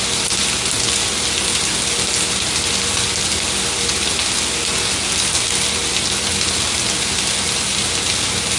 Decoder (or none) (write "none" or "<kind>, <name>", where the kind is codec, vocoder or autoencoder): none